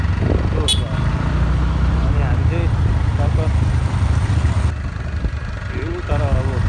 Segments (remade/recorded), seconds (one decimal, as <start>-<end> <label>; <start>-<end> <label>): 0.0-6.7 recorded